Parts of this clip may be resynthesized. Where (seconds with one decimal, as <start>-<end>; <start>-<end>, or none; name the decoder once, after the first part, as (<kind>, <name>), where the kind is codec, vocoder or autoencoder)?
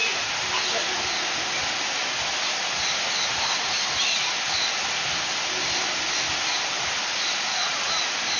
none